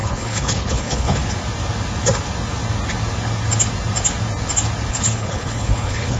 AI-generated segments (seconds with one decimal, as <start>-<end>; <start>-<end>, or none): 0.0-1.2; 4.9-6.2